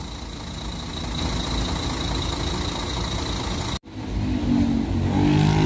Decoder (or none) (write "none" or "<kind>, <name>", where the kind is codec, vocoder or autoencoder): none